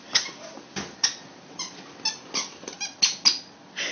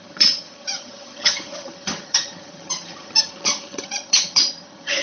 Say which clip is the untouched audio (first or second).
first